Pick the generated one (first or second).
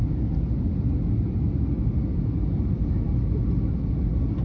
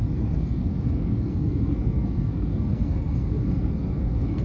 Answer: second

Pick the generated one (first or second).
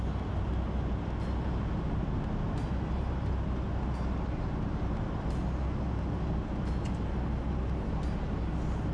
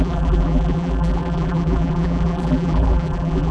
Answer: second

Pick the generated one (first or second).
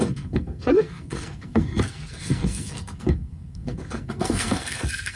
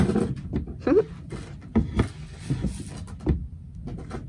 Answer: first